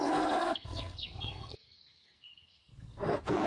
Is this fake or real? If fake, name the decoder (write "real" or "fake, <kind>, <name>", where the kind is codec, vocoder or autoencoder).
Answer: fake, codec, SNAC